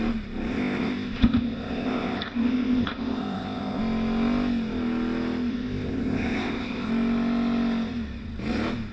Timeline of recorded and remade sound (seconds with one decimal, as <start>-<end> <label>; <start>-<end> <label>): 0.0-0.5 recorded; 0.5-3.8 remade; 3.8-5.5 recorded; 5.5-6.9 remade; 6.9-8.9 recorded